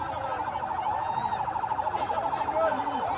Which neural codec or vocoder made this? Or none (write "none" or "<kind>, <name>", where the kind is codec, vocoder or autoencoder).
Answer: none